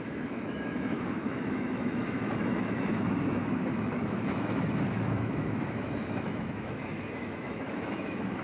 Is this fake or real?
fake